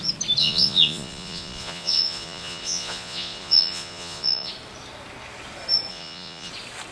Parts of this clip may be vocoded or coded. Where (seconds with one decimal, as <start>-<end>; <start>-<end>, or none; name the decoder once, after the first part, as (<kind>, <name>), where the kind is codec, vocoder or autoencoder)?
0.4-4.5 (vocoder, Vocos); 5.9-6.5